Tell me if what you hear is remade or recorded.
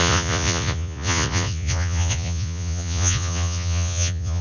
remade